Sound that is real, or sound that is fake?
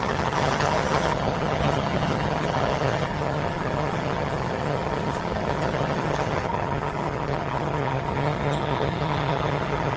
fake